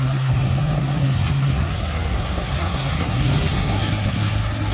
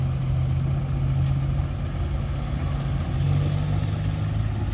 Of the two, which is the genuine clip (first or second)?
second